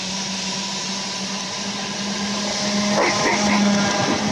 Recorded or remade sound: recorded